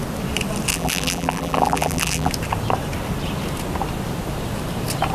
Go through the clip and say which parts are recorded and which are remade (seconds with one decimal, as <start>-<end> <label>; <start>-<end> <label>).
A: 0.0-0.7 recorded; 0.7-2.3 remade; 2.3-5.1 recorded